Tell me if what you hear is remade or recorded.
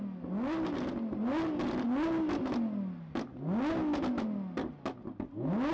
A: recorded